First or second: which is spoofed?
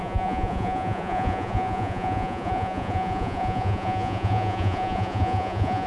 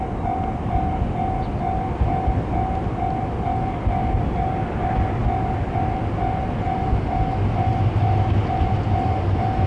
first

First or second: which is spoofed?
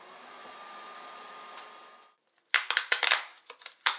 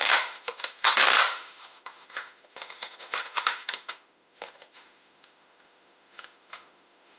second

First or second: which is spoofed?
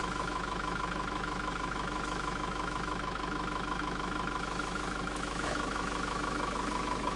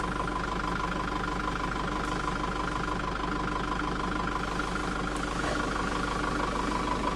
first